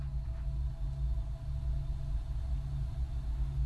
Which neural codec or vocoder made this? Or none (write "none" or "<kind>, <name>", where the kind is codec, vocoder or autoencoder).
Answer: none